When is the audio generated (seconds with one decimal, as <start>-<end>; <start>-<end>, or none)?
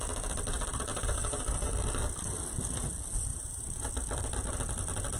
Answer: 0.9-1.7; 3.3-3.9